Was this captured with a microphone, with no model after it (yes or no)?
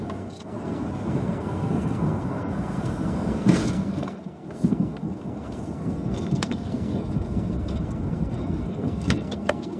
no